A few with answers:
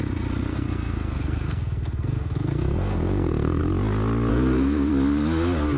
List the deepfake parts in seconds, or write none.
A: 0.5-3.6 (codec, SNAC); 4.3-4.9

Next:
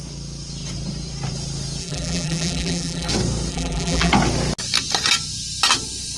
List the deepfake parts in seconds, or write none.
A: 1.8-3.1 (vocoder, BigVGAN v2); 3.5-4.1